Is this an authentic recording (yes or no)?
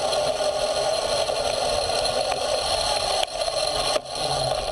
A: yes